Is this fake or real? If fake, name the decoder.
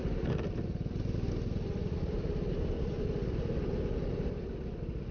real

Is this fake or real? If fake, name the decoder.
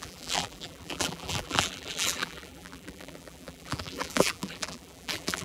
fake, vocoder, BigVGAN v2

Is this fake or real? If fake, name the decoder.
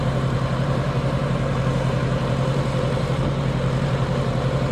fake, vocoder, BigVGAN v2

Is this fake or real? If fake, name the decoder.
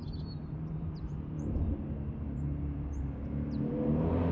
fake, vocoder, BigVGAN v2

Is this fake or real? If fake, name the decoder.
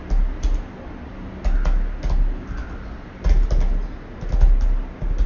real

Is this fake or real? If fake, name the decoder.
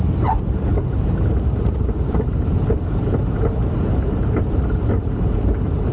fake, vocoder, BigVGAN v2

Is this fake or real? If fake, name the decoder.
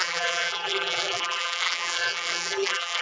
fake, vocoder, BigVGAN v2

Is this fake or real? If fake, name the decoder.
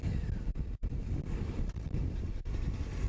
real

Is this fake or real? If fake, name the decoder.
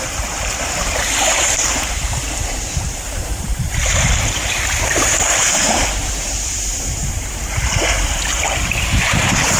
fake, vocoder, BigVGAN v2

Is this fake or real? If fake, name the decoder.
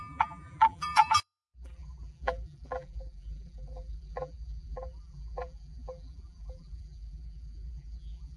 fake, vocoder, BigVGAN v2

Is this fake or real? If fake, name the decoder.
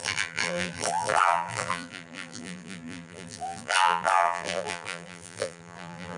fake, vocoder, BigVGAN v2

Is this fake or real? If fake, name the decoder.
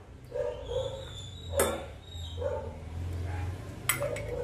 real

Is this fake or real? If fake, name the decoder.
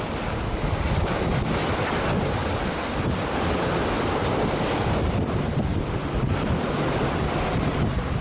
real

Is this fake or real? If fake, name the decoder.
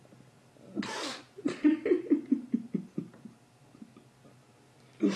real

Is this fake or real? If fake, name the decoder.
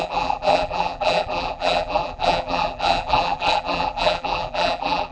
fake, vocoder, BigVGAN v2